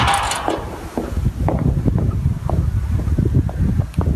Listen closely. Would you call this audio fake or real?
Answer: real